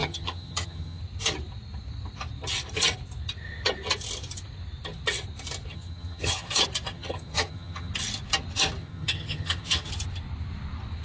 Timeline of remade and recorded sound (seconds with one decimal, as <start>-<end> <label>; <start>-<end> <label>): 0.0-1.0 remade; 1.0-5.7 recorded; 5.7-6.5 remade; 6.5-6.9 recorded; 6.9-7.9 remade; 7.9-8.8 recorded; 8.8-9.9 remade; 9.9-11.0 recorded